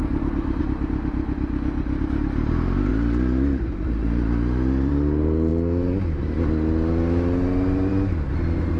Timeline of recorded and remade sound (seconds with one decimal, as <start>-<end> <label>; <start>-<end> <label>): 0.0-2.9 recorded; 2.9-4.9 remade; 4.9-8.8 recorded